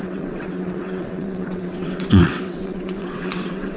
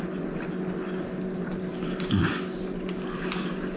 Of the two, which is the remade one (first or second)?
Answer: first